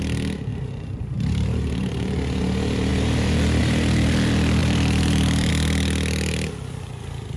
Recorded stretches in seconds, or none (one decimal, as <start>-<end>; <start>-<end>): 0.0-0.5; 2.4-4.6; 5.5-7.4